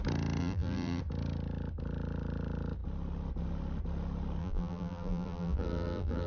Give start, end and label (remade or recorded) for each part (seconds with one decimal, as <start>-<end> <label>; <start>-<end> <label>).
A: 0.0-0.4 recorded; 0.4-1.0 remade; 1.0-4.4 recorded; 4.4-6.3 remade